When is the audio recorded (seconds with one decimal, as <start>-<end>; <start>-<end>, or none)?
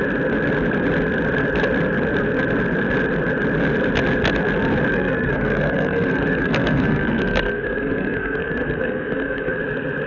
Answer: 0.0-4.9; 9.6-10.1